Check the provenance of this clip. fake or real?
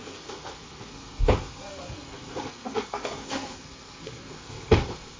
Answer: fake